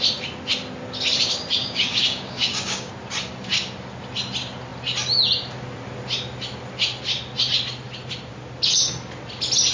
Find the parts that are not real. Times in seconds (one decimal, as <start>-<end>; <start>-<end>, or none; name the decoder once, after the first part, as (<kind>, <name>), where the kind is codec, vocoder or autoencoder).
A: 1.6-2.9 (codec, DAC)